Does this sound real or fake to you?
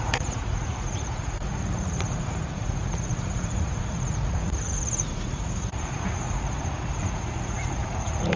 fake